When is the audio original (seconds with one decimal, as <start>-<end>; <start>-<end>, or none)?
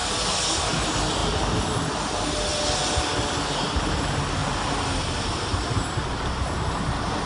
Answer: 0.0-7.3